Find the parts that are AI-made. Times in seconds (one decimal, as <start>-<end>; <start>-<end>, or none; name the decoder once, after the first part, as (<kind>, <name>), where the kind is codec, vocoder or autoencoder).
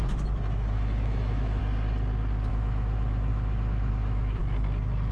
0.0-1.6 (autoencoder, DAC-VAE); 2.5-4.4